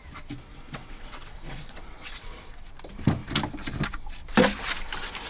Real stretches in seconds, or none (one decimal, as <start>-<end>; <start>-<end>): 0.0-0.5; 2.7-5.3